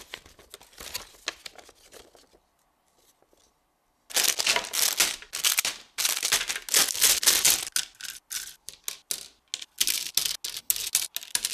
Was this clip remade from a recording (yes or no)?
no